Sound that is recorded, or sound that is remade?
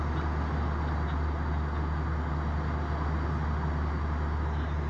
recorded